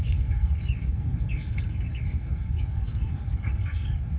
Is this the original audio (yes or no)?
no